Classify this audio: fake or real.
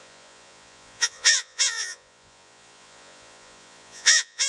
fake